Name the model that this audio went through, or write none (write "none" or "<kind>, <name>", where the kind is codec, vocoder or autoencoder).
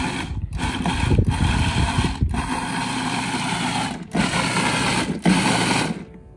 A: none